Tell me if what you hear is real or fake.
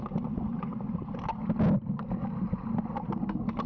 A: real